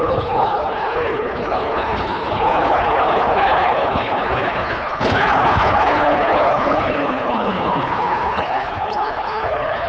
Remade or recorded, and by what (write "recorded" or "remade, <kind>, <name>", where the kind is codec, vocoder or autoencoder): remade, codec, HILCodec